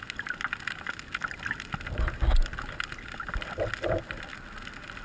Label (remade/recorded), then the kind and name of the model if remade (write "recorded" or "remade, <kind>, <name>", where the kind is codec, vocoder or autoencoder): recorded